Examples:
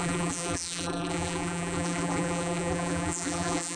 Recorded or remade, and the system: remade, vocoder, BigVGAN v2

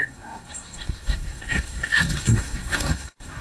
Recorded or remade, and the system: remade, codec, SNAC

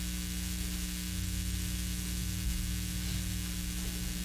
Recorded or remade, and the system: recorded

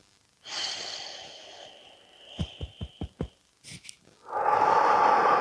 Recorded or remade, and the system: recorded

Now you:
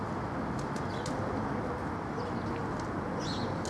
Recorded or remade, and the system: recorded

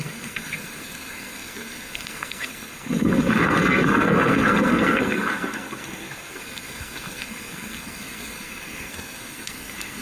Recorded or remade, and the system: remade, codec, SNAC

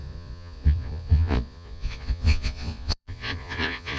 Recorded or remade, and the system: remade, vocoder, Vocos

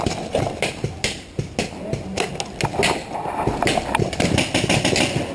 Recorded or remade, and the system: recorded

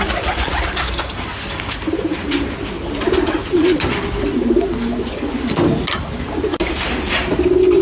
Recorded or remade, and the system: recorded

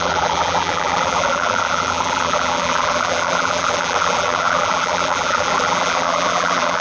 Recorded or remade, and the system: remade, vocoder, BigVGAN v2